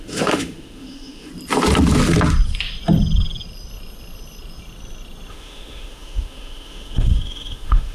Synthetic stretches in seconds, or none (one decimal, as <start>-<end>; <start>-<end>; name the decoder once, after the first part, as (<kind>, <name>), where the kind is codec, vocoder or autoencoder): 0.0-1.3 (autoencoder, DAC-VAE); 5.3-7.9